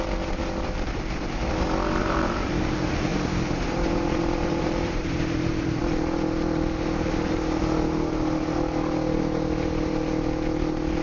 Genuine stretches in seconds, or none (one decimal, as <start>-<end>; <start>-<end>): 0.0-2.0; 2.5-3.1; 5.8-11.0